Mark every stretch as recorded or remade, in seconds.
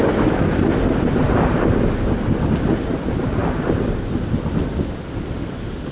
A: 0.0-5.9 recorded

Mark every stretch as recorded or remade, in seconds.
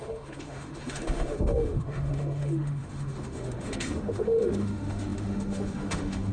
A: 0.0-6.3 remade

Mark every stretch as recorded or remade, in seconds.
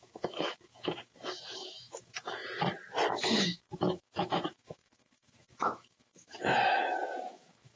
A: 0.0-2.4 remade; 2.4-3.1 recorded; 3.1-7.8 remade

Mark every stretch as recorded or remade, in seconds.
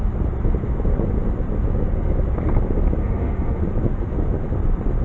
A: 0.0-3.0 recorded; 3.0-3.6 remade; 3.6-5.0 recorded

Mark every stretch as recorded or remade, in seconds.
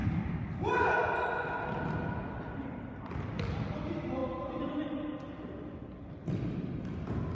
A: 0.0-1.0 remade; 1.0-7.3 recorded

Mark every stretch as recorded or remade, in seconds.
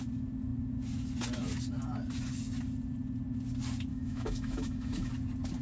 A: 0.0-3.9 recorded; 3.9-5.1 remade; 5.1-5.6 recorded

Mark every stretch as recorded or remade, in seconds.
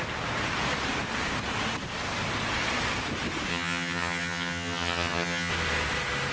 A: 0.0-3.5 recorded; 3.5-5.5 remade; 5.5-6.3 recorded